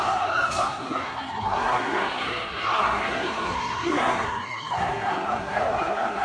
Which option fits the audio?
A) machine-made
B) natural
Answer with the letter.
A